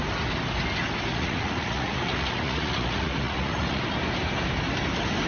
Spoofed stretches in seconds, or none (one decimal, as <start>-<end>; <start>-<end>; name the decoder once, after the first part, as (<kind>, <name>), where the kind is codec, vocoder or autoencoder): 1.1-3.8 (vocoder, Vocos)